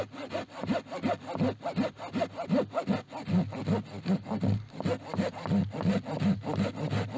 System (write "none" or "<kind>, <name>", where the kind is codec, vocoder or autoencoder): none